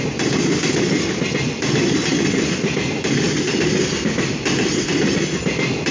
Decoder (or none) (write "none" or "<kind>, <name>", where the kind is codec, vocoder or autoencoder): none